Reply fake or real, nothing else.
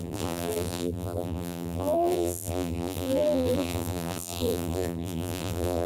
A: fake